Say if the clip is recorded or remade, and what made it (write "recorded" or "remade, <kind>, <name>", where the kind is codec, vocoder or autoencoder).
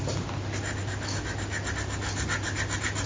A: recorded